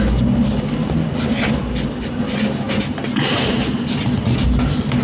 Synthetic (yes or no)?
no